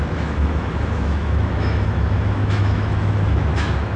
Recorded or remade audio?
remade